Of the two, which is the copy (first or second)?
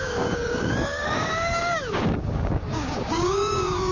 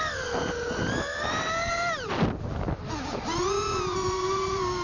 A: first